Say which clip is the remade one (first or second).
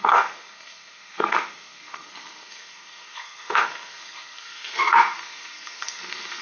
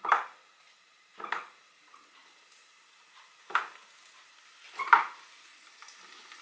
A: first